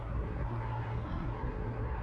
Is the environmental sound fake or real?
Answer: fake